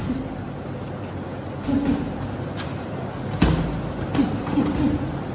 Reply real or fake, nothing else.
real